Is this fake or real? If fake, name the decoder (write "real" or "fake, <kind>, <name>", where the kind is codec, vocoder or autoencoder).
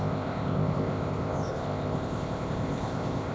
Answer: fake, codec, ZipCodec